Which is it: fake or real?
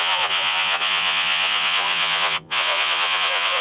fake